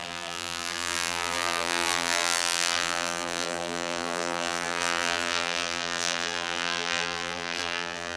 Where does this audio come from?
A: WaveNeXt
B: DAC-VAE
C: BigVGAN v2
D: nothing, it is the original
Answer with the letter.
C